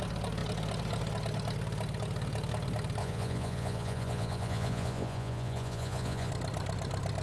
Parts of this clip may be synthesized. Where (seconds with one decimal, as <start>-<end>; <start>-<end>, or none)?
3.0-6.3